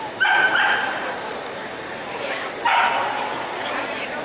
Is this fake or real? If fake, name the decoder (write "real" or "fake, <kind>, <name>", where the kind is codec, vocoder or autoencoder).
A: fake, vocoder, BigVGAN v2